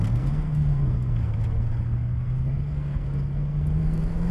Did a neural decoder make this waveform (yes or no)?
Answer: yes